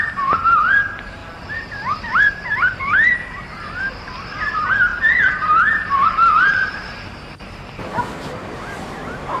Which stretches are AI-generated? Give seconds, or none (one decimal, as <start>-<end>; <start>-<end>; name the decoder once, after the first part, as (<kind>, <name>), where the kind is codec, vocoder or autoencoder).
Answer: 0.0-1.2 (vocoder, BigVGAN v2); 2.1-9.4